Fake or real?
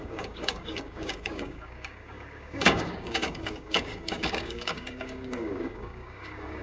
fake